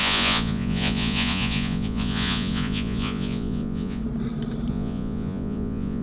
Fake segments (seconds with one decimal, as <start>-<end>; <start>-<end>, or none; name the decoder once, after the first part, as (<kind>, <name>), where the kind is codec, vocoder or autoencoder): 0.0-4.0 (vocoder, Vocos); 4.7-6.0